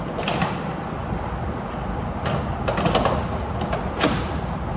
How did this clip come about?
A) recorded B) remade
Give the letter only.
A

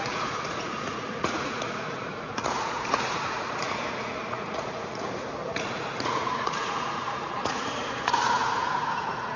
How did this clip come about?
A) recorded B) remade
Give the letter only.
B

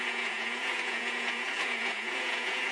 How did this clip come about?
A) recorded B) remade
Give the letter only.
B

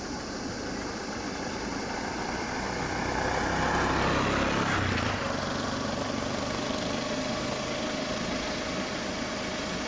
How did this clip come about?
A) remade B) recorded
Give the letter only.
B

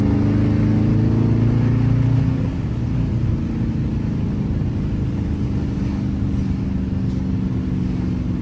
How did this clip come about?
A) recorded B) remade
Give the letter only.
A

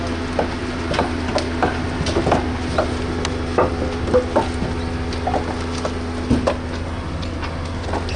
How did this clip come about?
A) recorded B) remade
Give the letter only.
A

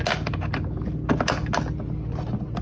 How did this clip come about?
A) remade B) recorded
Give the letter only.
B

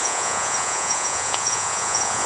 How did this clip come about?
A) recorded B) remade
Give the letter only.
B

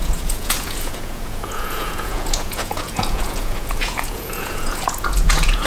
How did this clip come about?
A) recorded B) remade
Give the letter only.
B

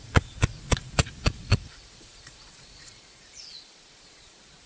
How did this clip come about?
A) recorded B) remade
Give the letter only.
B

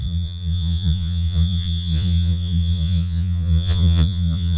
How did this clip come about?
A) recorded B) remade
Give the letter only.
B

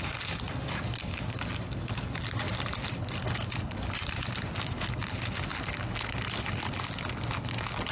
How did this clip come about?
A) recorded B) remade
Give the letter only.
A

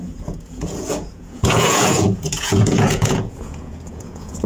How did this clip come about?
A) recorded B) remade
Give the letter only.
B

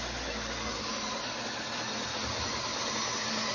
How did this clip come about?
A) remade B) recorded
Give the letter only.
B